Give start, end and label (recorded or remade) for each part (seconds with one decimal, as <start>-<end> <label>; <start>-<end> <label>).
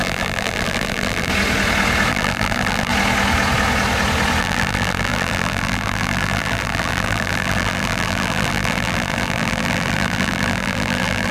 0.0-1.3 remade; 1.3-2.1 recorded; 2.1-2.9 remade; 2.9-4.4 recorded; 4.4-11.3 remade